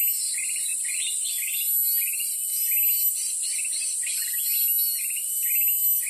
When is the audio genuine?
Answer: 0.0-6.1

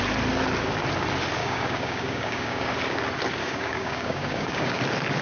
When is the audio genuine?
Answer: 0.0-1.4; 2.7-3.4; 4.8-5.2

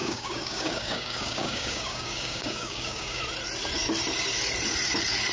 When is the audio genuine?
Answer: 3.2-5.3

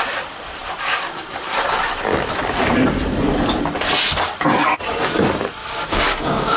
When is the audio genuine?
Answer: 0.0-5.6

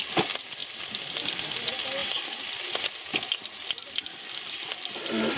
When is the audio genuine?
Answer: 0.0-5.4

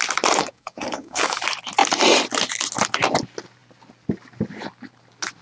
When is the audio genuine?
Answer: 0.0-0.4; 1.4-5.4

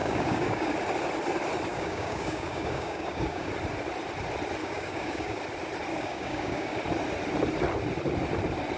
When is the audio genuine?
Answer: 0.7-1.7; 3.5-4.6; 5.4-5.9; 6.8-8.8